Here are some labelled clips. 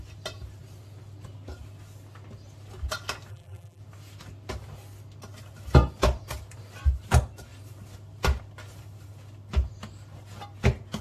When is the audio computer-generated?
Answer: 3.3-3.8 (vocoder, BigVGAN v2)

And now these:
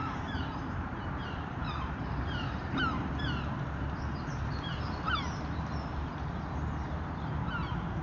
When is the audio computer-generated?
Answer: 0.0-4.8 (vocoder, BigVGAN v2)

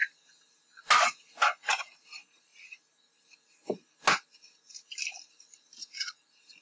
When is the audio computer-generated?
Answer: 1.7-2.5 (vocoder, BigVGAN v2); 5.3-6.6

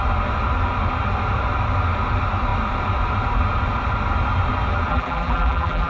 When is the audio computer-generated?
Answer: 4.9-5.9 (vocoder, BigVGAN v2)

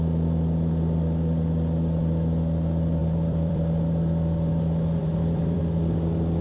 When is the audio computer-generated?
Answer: 3.0-4.5 (vocoder, BigVGAN v2); 5.0-5.6